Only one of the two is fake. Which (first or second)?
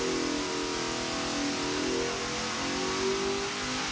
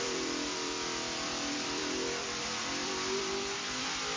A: second